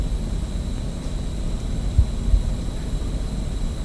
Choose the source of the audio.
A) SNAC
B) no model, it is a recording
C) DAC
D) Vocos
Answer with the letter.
B